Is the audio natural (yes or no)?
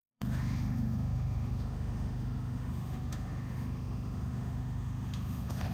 no